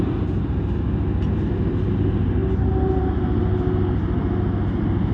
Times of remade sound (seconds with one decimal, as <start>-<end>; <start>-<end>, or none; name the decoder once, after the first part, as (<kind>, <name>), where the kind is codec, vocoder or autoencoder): none